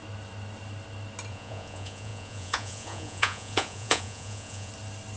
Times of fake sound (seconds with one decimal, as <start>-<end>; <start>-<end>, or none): 1.3-4.7